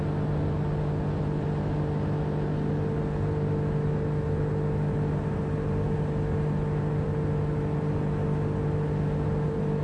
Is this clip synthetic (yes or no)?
no